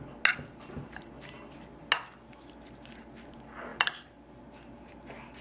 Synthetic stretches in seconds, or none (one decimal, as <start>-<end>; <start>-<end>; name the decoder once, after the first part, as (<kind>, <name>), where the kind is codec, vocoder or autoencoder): none